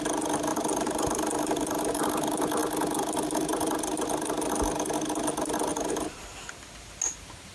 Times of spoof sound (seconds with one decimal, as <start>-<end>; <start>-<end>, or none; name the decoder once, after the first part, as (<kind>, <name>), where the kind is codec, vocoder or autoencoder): 0.5-2.0 (vocoder, BigVGAN v2); 5.7-7.0